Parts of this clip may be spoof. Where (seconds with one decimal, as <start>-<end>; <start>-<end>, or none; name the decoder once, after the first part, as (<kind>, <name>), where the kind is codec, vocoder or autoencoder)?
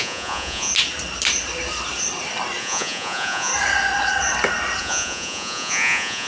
0.0-0.7 (vocoder, Vocos); 2.6-3.5; 4.8-6.3